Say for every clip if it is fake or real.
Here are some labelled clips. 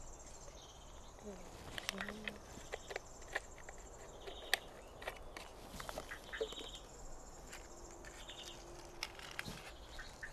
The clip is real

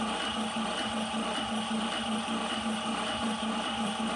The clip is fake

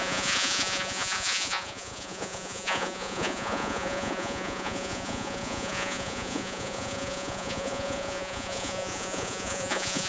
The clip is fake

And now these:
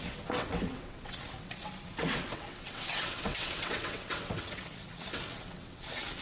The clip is fake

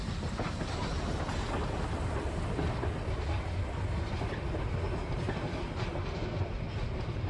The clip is real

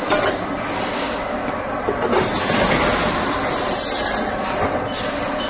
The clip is real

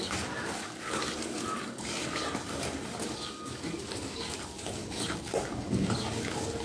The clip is fake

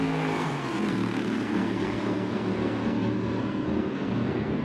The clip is fake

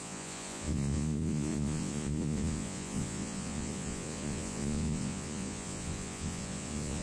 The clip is fake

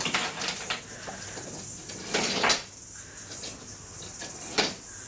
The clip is real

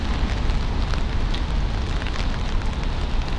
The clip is real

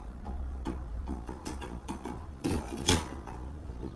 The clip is fake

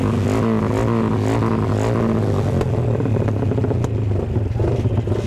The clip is real